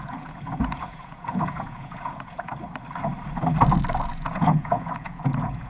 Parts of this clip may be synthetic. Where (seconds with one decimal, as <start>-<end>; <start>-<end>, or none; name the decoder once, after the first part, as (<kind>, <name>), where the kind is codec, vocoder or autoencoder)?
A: 0.0-2.5 (vocoder, Vocos); 4.1-5.7

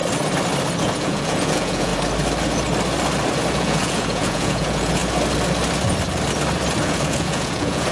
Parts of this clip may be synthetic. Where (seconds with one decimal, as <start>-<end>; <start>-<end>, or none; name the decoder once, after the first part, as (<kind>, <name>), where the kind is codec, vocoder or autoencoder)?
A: 0.8-1.9 (vocoder, Vocos); 3.5-5.0; 6.8-7.9

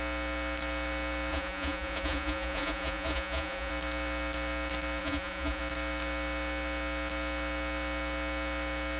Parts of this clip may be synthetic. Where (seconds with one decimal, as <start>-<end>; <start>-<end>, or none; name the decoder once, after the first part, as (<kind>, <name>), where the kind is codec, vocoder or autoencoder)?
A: 1.3-3.7 (vocoder, Vocos); 5.0-5.6

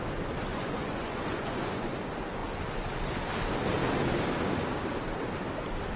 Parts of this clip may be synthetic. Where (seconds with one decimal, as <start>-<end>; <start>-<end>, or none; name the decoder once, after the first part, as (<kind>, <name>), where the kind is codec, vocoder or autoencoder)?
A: 0.5-1.9 (vocoder, Vocos)

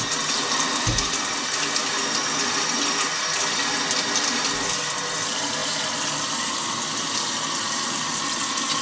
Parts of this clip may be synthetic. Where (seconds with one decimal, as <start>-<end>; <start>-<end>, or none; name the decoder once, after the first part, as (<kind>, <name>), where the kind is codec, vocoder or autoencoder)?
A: none